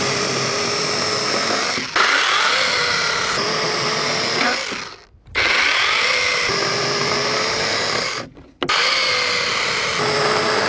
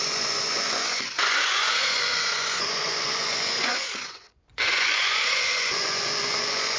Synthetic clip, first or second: second